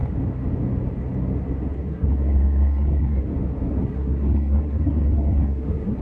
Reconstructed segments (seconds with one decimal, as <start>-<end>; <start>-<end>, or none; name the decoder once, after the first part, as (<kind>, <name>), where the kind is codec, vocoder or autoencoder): 1.9-3.2 (codec, SNAC); 3.7-6.0